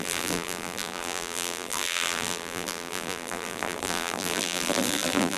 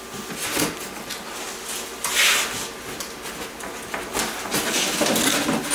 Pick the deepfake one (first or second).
first